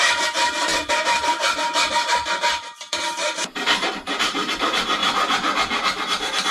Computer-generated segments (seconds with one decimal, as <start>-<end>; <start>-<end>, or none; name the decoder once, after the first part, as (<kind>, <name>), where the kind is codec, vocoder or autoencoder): 0.0-5.0 (vocoder, BigVGAN v2)